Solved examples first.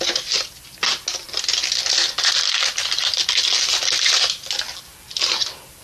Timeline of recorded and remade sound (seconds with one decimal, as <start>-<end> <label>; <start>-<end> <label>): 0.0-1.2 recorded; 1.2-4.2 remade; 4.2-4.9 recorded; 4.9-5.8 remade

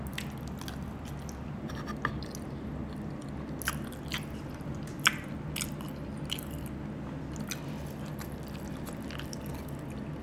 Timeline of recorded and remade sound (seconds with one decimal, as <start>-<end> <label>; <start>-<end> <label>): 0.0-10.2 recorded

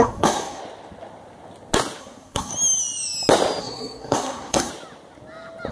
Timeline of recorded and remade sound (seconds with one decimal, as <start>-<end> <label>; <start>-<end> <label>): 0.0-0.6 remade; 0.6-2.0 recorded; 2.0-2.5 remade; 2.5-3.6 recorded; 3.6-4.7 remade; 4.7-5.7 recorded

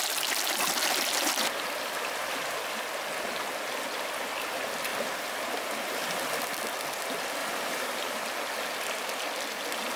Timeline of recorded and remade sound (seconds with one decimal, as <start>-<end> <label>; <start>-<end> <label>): 0.0-7.4 recorded; 7.4-8.3 remade; 8.3-10.0 recorded

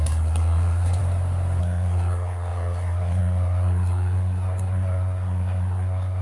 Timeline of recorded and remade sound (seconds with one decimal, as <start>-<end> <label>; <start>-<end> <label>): 0.0-1.0 remade; 1.0-1.6 recorded; 1.6-6.2 remade

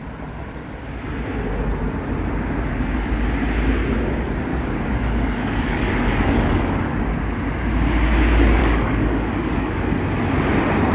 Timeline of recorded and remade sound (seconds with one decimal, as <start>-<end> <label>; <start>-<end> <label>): 0.0-4.5 recorded; 4.5-7.0 remade; 7.0-8.6 recorded; 8.6-10.0 remade; 10.0-10.9 recorded

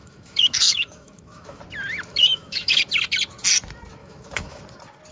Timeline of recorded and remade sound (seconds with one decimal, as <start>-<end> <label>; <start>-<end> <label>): 0.0-1.6 remade; 1.6-2.1 recorded; 2.1-2.8 remade; 2.8-4.0 recorded; 4.0-4.6 remade; 4.6-5.1 recorded